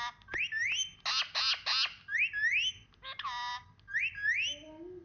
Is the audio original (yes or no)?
yes